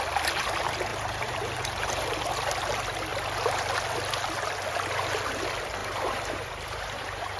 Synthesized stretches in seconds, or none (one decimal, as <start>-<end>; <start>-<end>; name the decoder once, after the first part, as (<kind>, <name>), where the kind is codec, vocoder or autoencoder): 0.9-2.0 (vocoder, BigVGAN v2); 5.8-7.4